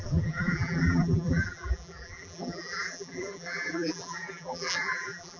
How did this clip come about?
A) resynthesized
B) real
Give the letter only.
A